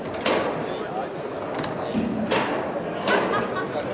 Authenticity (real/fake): real